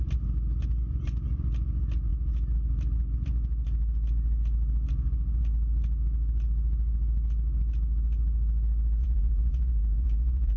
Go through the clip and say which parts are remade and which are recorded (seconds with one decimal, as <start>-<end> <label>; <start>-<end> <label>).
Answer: 0.0-9.0 recorded; 9.0-10.6 remade